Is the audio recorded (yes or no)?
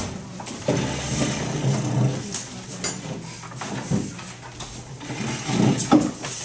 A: yes